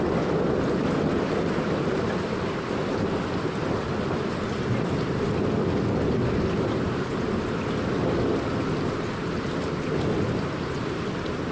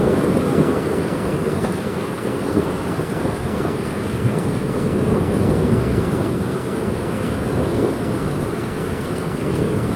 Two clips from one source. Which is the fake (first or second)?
second